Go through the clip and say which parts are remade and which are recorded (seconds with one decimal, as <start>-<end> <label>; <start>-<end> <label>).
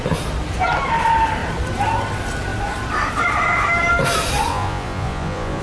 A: 0.0-4.5 recorded; 4.5-5.6 remade